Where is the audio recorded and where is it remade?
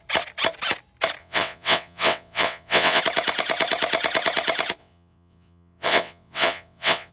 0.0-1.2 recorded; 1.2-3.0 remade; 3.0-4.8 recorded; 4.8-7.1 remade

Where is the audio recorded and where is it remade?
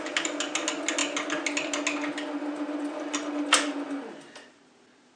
0.0-5.2 recorded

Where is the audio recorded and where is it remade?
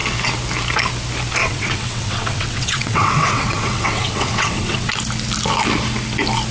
0.0-1.4 recorded; 1.4-4.9 remade; 4.9-6.5 recorded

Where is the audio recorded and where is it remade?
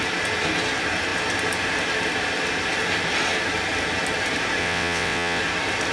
0.0-4.6 recorded; 4.6-5.4 remade; 5.4-5.9 recorded